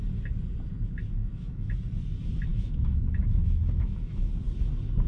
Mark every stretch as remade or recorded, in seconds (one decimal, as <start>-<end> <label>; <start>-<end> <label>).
0.0-1.2 recorded; 1.2-1.7 remade; 1.7-2.5 recorded; 2.5-4.3 remade; 4.3-5.1 recorded